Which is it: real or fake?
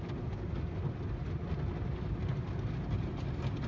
real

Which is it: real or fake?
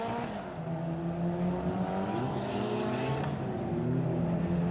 real